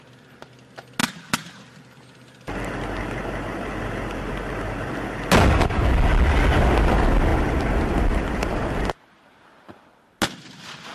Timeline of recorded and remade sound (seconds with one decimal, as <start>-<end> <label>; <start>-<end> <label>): 0.0-10.9 recorded